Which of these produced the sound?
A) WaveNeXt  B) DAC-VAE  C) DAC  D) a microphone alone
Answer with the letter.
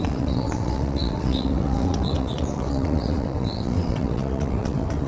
A